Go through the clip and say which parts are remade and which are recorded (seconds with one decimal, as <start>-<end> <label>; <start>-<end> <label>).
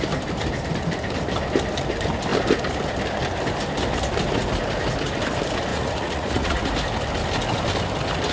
0.0-5.7 recorded; 5.7-6.7 remade; 6.7-8.3 recorded